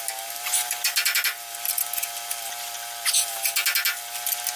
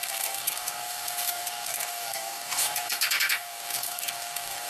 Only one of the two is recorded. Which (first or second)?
first